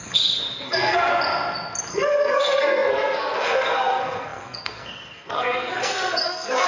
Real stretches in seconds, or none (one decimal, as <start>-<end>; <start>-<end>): 1.1-1.9